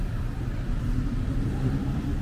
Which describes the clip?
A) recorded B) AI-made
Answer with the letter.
B